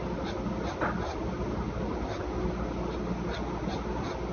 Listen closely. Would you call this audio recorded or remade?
recorded